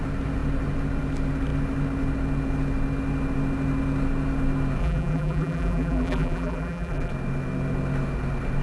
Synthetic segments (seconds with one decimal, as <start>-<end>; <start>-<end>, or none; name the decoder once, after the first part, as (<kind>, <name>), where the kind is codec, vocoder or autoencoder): 4.8-7.1 (vocoder, BigVGAN v2)